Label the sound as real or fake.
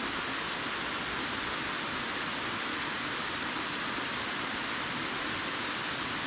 real